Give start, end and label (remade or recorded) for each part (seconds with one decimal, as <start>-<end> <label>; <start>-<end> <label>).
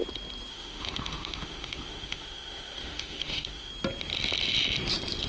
0.0-0.5 recorded; 0.5-3.7 remade; 3.7-5.3 recorded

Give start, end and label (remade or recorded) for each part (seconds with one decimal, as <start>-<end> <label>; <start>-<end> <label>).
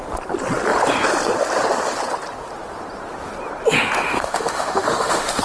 0.0-4.1 recorded; 4.1-5.4 remade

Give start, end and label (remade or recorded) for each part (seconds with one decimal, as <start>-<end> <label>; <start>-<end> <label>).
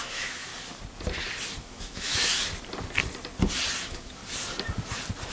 0.0-0.5 remade; 0.5-1.6 recorded; 1.6-2.3 remade; 2.3-3.8 recorded; 3.8-4.2 remade; 4.2-5.3 recorded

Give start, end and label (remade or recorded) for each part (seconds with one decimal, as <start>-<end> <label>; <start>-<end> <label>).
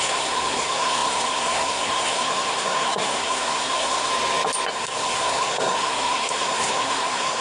0.0-4.1 remade; 4.1-4.7 recorded; 4.7-7.4 remade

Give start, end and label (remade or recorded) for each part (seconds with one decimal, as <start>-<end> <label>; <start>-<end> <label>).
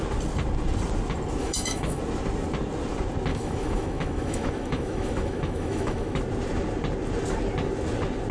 0.0-1.4 recorded; 1.4-2.0 remade; 2.0-3.3 recorded; 3.3-6.2 remade; 6.2-8.3 recorded